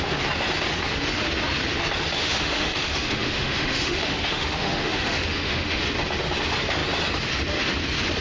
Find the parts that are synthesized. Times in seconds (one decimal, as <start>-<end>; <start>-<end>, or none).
2.2-5.8